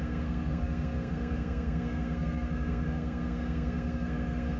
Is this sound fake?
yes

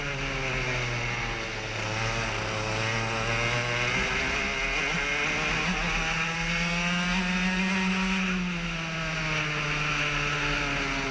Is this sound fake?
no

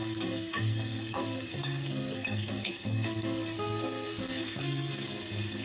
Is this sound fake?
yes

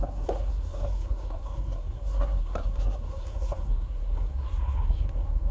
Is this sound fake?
yes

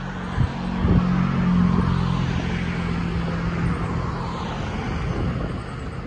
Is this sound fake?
no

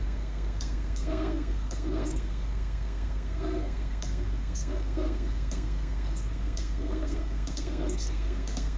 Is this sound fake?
yes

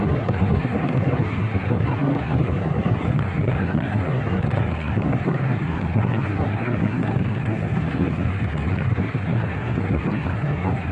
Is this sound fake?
yes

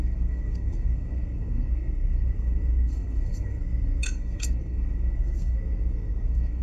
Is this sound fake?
yes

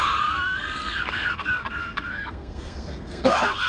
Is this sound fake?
yes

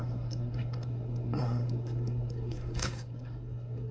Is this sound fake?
yes